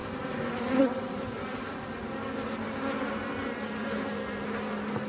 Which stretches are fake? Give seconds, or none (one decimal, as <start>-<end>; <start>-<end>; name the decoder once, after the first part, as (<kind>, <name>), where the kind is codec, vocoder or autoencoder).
none